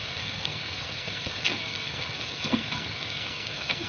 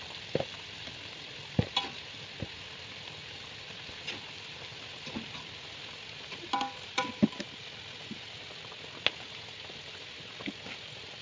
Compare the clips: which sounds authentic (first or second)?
second